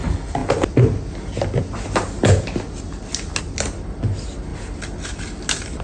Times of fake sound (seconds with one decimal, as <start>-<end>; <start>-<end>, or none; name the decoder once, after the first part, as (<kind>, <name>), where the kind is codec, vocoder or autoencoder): none